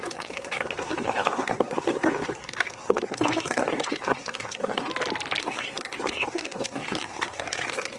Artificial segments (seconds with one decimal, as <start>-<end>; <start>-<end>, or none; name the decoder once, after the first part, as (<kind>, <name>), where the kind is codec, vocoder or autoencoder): 0.0-4.9 (codec, SNAC); 5.4-8.0